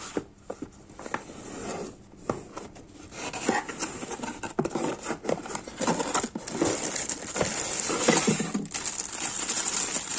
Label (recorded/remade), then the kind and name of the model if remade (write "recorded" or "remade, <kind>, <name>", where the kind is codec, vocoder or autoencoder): recorded